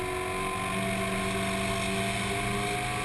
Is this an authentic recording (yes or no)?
yes